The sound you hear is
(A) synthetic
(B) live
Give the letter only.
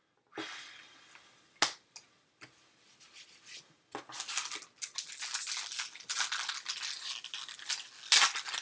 B